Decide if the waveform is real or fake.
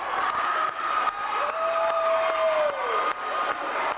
real